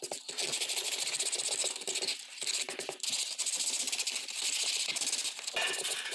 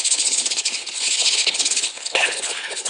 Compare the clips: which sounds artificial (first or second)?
second